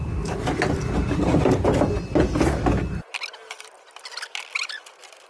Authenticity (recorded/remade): recorded